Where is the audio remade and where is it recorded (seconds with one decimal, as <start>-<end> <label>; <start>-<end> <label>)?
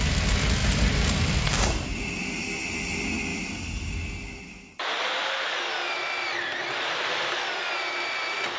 0.0-8.6 recorded